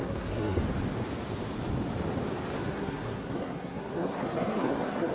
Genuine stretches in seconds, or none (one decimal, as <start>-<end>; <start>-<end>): 0.6-2.6